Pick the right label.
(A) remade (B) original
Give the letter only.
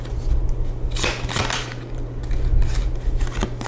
B